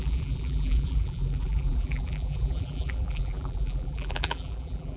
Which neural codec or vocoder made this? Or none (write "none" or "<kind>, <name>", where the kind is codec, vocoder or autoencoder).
vocoder, BigVGAN v2